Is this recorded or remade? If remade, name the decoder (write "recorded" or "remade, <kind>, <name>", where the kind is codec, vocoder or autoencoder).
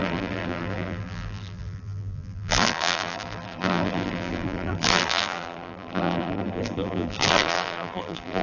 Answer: remade, vocoder, BigVGAN v2